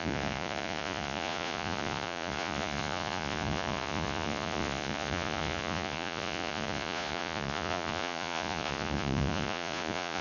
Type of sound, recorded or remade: remade